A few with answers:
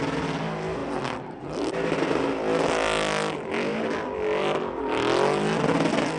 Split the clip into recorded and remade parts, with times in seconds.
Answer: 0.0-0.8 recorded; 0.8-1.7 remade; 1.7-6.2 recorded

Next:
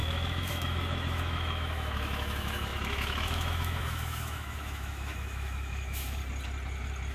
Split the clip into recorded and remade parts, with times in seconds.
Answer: 0.0-6.2 remade; 6.2-7.1 recorded

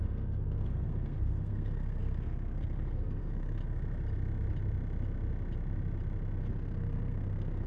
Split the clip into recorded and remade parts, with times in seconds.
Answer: 0.0-3.6 remade; 3.6-6.4 recorded; 6.4-7.7 remade

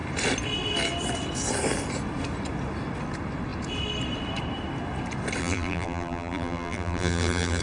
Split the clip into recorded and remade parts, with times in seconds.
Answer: 0.0-5.4 recorded; 5.4-7.6 remade